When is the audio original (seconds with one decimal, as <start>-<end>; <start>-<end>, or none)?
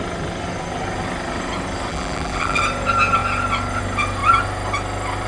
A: 0.0-1.9; 2.6-5.3